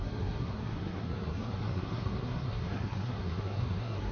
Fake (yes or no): yes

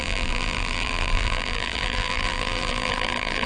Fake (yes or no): yes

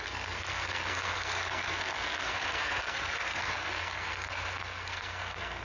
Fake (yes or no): yes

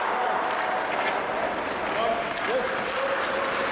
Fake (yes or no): no